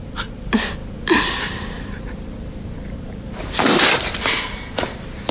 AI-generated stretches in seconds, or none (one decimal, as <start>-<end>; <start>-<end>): none